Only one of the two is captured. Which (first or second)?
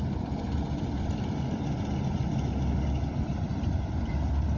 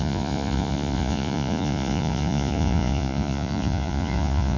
first